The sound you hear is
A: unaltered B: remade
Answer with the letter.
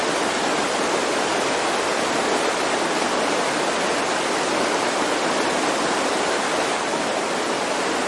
A